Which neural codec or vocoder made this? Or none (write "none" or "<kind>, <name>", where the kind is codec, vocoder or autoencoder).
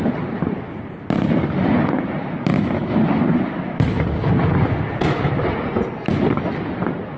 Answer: none